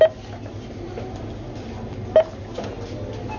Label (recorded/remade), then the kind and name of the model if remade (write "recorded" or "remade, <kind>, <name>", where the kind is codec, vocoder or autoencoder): recorded